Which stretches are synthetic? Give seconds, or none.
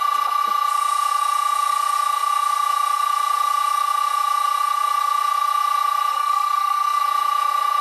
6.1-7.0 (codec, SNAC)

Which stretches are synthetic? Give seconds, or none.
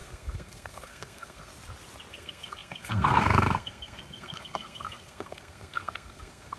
0.0-1.5 (codec, SNAC); 2.1-6.6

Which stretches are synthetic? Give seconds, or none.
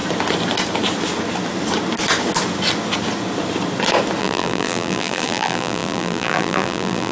4.2-7.1 (vocoder, BigVGAN v2)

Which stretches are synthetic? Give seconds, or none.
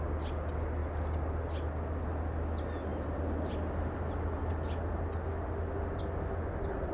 none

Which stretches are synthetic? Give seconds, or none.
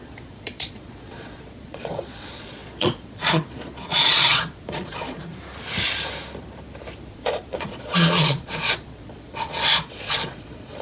0.0-5.3 (vocoder, Vocos); 7.1-10.8